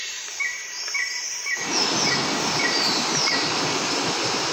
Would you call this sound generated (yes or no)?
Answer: yes